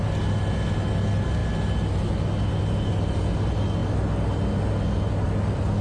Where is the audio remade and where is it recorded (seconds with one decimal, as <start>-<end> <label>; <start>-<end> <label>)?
0.0-5.8 recorded